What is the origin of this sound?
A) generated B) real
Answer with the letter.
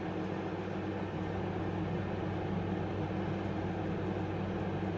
B